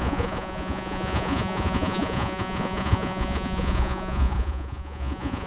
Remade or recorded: remade